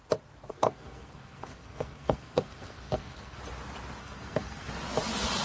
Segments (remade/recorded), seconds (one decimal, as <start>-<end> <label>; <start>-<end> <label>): 0.0-0.5 recorded; 0.5-3.4 remade; 3.4-4.0 recorded; 4.0-4.7 remade; 4.7-5.4 recorded